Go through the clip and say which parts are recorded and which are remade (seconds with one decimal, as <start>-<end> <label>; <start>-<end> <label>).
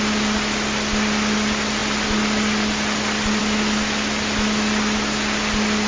0.0-5.9 recorded